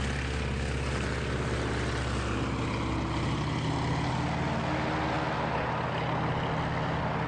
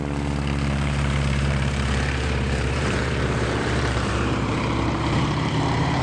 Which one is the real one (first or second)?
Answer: first